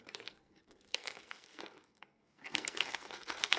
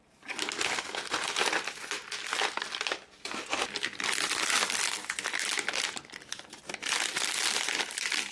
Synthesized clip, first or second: first